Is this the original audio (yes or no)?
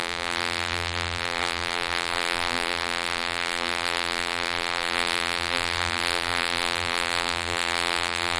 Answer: no